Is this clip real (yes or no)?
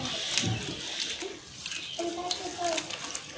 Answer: yes